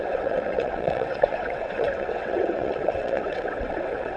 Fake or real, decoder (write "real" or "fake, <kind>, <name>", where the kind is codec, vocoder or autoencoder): fake, vocoder, WaveNeXt